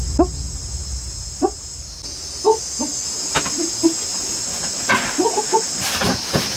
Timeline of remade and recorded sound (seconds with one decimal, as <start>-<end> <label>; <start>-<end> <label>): 0.0-4.1 recorded; 4.1-6.6 remade